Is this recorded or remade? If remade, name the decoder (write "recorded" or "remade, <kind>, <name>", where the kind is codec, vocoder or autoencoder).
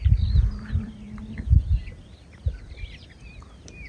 recorded